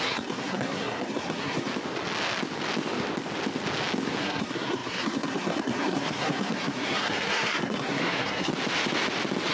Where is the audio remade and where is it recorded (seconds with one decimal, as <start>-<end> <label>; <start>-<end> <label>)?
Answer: 0.0-1.7 remade; 1.7-4.2 recorded; 4.2-8.5 remade; 8.5-9.5 recorded